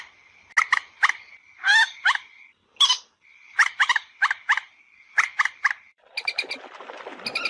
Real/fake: real